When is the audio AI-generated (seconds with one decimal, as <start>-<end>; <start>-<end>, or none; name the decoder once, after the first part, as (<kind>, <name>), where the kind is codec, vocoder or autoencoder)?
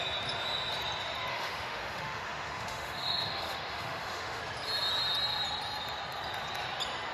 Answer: 1.3-4.4 (autoencoder, DAC-VAE)